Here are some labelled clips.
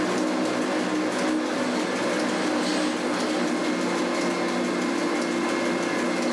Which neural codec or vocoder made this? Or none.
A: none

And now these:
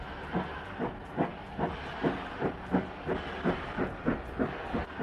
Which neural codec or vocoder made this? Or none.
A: none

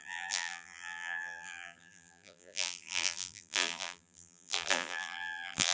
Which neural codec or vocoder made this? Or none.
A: vocoder, BigVGAN v2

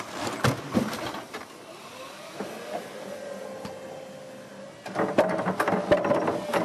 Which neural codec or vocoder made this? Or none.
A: none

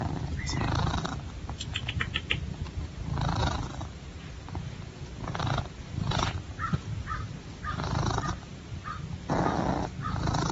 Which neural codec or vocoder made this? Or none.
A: none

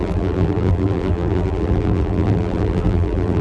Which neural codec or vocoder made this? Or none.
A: vocoder, BigVGAN v2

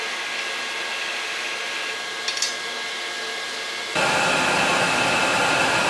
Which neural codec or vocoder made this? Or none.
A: none